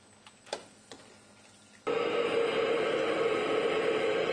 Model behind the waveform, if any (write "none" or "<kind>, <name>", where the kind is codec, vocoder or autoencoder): none